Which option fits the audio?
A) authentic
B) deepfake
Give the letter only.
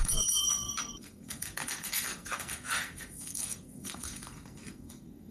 B